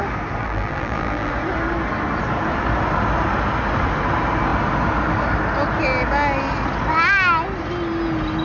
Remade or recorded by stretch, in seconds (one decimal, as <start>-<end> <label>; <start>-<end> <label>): 0.0-0.4 recorded; 0.4-1.3 remade; 1.3-8.4 recorded